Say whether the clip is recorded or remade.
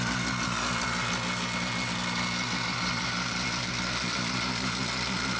recorded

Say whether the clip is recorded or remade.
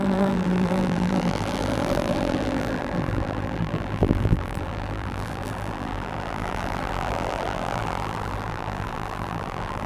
remade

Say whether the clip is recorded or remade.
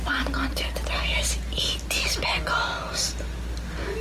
recorded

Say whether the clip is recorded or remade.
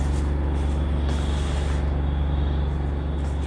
recorded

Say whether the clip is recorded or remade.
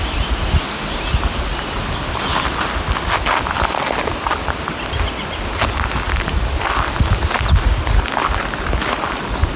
recorded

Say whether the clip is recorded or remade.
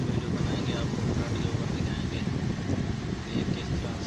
recorded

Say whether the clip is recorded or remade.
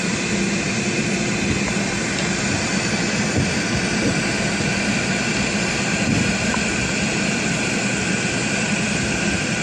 remade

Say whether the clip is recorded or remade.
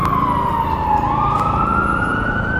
recorded